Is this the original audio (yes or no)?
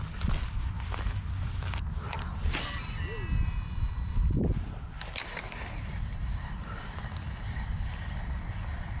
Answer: yes